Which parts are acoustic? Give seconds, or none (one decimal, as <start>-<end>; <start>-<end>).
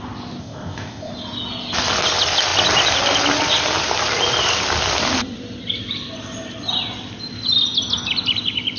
0.0-0.4; 1.1-8.8